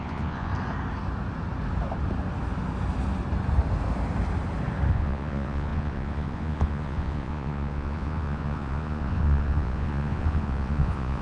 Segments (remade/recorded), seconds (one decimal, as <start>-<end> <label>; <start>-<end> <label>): 0.0-0.5 remade; 0.5-4.9 recorded; 4.9-11.2 remade